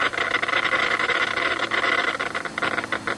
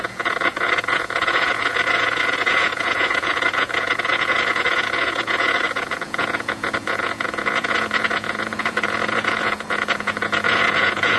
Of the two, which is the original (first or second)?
first